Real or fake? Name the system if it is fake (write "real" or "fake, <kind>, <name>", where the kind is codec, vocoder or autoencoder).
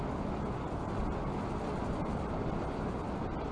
real